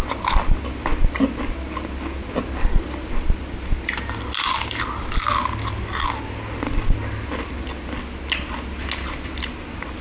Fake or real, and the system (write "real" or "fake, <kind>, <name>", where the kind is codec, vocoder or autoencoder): real